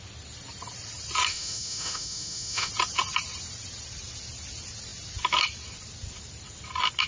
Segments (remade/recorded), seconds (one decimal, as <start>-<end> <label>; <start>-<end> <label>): 0.0-1.3 recorded; 1.3-2.7 remade; 2.7-7.1 recorded